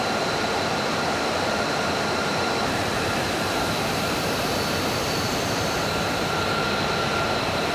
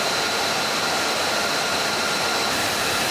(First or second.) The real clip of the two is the second